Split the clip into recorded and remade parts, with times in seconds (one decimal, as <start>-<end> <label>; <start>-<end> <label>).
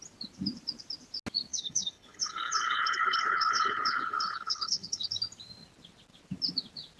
0.0-1.5 recorded; 1.5-5.1 remade; 5.1-7.0 recorded